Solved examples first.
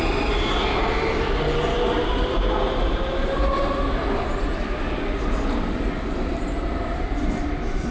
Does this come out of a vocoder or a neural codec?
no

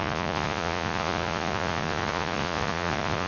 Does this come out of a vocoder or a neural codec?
yes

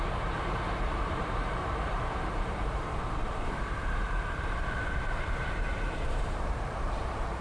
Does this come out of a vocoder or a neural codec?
yes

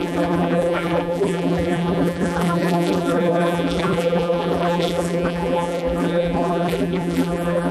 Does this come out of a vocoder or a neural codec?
yes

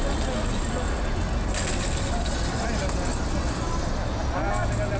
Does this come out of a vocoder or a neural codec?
no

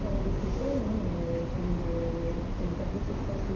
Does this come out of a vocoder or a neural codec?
no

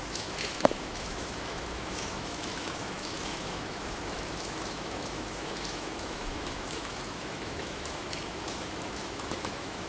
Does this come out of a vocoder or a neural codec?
yes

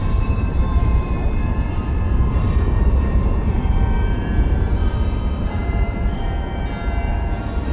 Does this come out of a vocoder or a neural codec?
yes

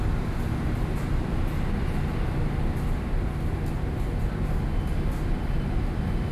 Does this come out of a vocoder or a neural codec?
no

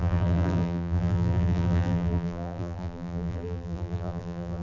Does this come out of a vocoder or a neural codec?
yes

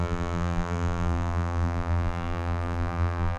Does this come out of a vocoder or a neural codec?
yes